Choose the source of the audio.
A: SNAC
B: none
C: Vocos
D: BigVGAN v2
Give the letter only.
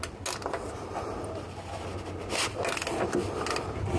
B